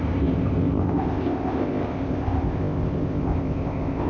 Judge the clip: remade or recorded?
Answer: remade